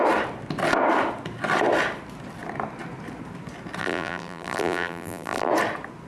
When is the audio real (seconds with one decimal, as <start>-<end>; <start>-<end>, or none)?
0.0-3.8; 5.5-6.1